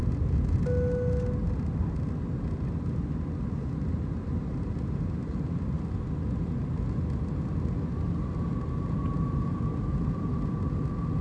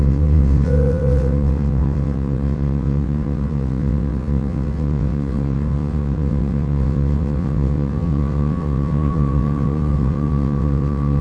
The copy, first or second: second